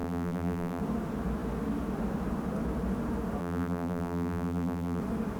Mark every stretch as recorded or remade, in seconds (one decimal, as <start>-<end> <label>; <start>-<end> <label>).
0.0-0.8 remade; 0.8-3.4 recorded; 3.4-5.0 remade; 5.0-5.4 recorded